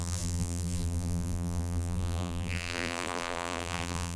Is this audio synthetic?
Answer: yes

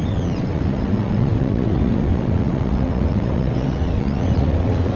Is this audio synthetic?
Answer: yes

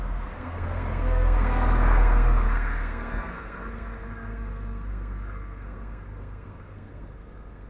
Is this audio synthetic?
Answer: yes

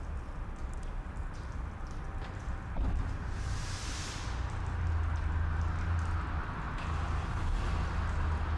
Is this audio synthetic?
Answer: no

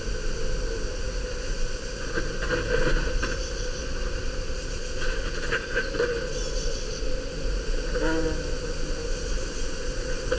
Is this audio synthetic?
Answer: no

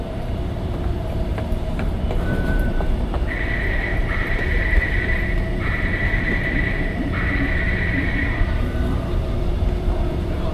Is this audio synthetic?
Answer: yes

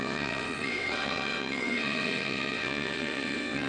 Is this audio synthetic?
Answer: yes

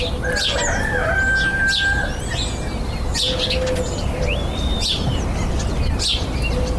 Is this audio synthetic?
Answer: no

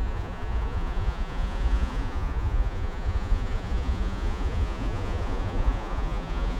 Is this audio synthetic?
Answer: yes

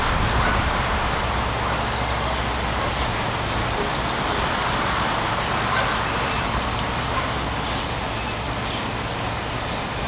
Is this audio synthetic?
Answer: no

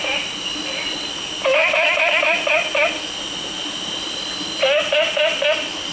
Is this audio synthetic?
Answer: no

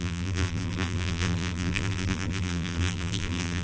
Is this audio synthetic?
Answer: yes